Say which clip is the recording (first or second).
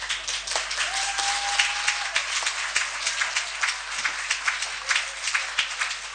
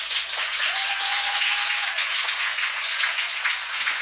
first